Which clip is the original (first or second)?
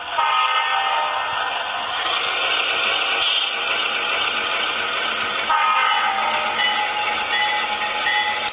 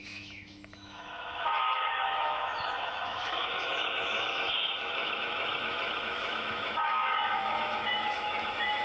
first